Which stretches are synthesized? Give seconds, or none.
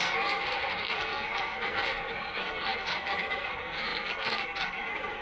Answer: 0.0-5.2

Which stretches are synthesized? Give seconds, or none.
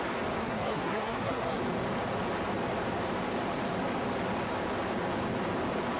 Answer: 0.4-1.6